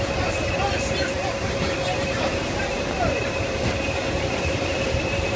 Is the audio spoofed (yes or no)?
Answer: yes